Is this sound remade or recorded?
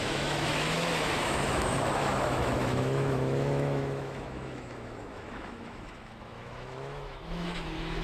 remade